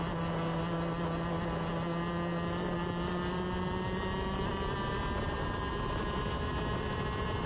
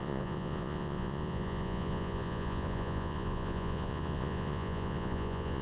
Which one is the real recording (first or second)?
first